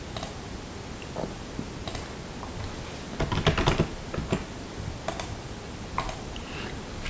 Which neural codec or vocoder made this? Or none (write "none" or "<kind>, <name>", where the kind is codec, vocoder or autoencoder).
none